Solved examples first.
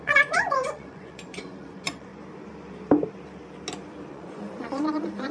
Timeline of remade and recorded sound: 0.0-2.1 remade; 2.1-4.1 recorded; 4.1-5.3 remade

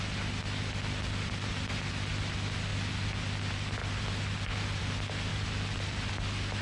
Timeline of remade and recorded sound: 0.0-6.6 recorded

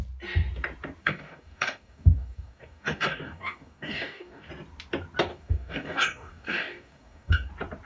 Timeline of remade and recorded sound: 0.0-1.0 recorded; 1.0-4.5 remade; 4.5-5.3 recorded; 5.3-7.5 remade; 7.5-7.9 recorded